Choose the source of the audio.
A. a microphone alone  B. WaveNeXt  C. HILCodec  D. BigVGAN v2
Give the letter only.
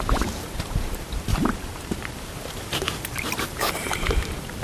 D